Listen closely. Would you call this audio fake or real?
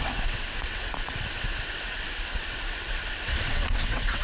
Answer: fake